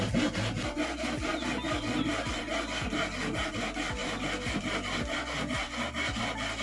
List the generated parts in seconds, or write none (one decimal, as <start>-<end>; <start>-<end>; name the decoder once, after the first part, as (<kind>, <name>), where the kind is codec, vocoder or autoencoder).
none